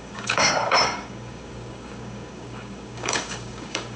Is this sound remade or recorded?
remade